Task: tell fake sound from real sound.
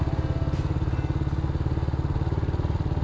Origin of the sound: real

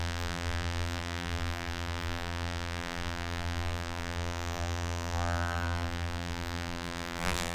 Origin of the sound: fake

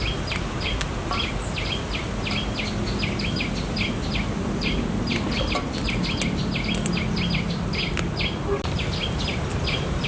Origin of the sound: real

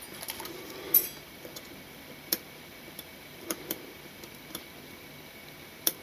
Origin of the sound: fake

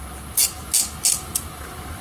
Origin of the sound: real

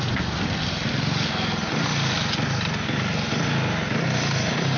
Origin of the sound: real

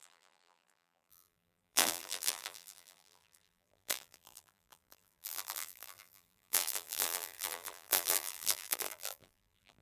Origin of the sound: fake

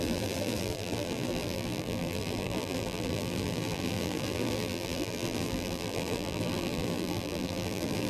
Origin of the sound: fake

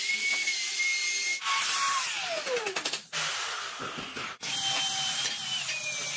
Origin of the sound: real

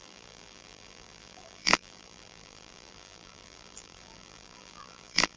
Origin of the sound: fake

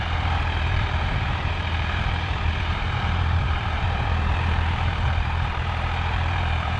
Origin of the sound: fake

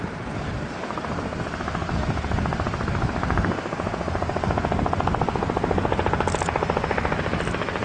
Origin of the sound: real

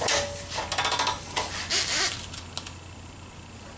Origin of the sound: real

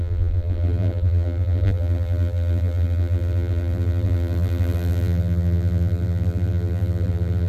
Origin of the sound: fake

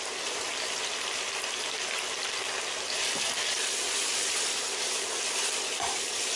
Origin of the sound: fake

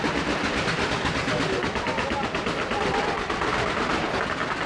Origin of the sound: real